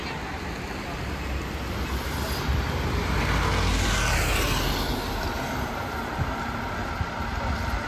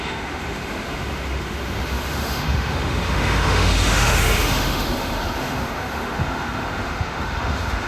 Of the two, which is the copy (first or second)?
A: second